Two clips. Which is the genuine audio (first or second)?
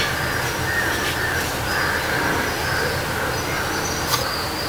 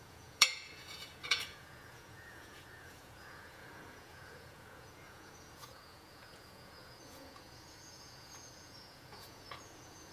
first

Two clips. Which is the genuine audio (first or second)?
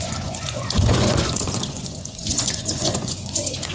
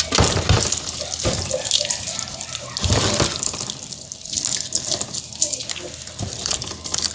second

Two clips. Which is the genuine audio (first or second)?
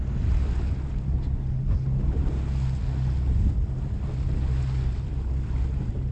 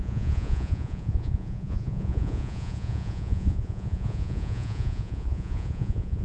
first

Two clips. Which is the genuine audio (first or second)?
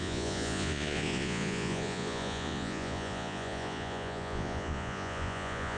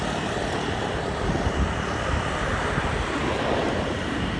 second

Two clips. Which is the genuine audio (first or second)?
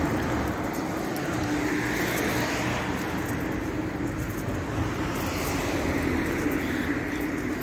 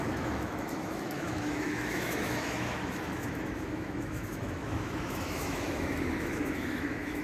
first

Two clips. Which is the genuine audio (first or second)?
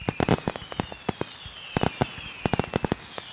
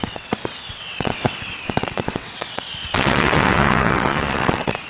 first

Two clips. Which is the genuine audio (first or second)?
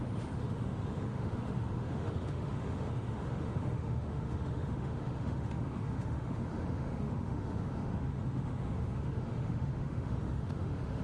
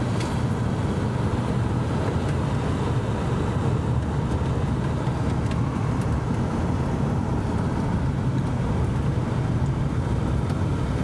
second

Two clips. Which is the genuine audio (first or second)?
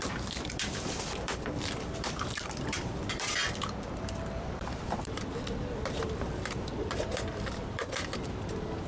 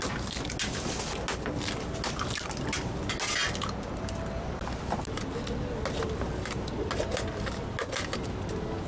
second